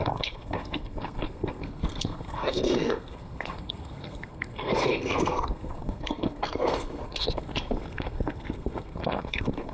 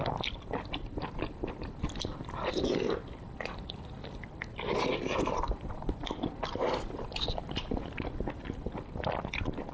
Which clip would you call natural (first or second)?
second